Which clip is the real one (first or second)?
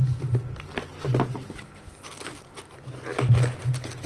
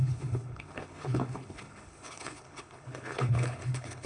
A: first